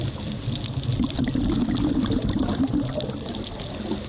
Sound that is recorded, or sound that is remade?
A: recorded